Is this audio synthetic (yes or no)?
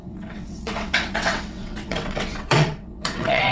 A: yes